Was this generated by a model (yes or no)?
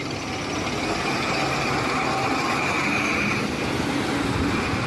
no